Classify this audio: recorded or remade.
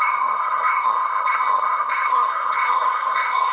remade